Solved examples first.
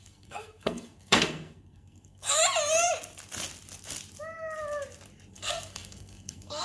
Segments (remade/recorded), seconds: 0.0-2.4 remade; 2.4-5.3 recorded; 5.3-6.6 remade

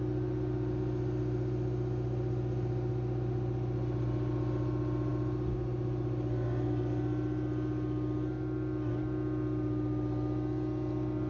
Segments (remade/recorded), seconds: 0.0-11.3 recorded

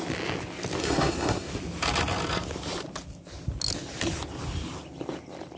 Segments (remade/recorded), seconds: 0.0-0.8 recorded; 0.8-1.5 remade; 1.5-5.6 recorded

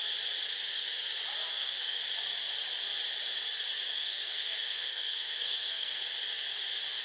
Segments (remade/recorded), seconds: 0.0-1.4 recorded; 1.4-2.0 remade; 2.0-3.9 recorded; 3.9-6.0 remade; 6.0-7.0 recorded

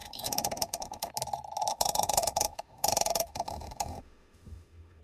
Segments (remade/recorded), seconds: 0.0-1.1 remade; 1.1-1.7 recorded; 1.7-5.0 remade